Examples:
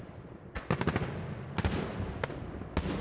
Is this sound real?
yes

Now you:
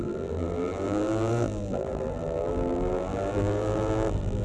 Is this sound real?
no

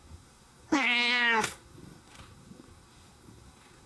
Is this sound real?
no